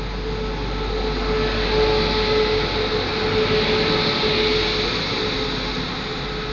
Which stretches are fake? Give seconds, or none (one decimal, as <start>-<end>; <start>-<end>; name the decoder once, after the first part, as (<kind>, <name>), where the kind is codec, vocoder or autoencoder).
none